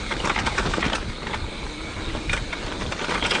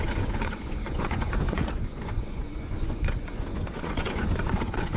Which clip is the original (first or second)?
first